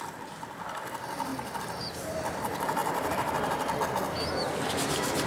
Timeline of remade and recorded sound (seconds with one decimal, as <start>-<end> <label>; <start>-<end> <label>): 0.0-5.3 recorded